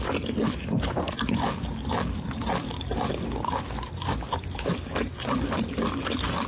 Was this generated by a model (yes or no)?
no